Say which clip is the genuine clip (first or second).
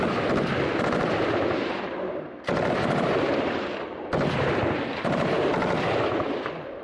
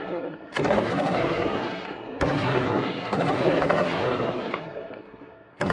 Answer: first